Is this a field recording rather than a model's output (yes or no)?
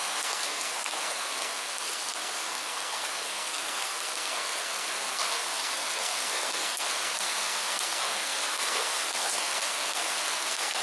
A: no